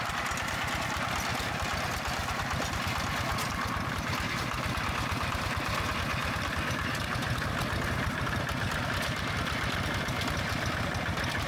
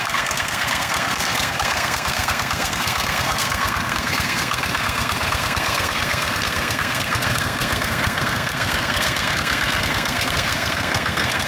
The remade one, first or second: second